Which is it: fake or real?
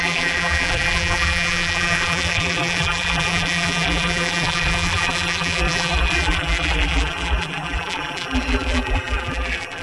fake